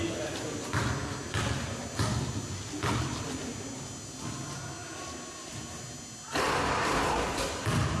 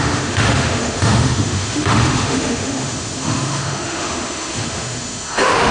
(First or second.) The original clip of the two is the first